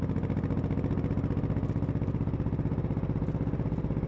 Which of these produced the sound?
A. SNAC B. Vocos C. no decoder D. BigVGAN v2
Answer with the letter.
C